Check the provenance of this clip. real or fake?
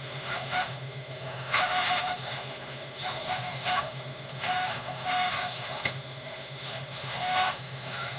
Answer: fake